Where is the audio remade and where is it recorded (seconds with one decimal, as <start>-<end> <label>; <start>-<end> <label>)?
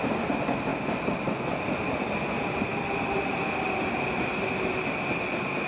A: 0.0-5.7 recorded